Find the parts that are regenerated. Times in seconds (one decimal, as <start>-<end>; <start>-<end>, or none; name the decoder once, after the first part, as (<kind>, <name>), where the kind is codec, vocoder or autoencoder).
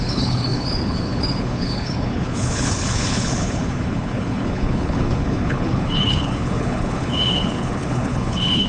0.0-8.7 (codec, HILCodec)